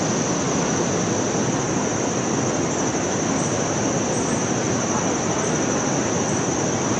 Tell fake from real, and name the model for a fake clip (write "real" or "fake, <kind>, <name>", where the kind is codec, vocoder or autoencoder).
real